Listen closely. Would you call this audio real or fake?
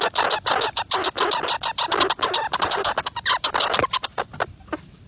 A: real